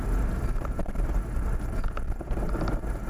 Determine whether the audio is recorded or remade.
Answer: recorded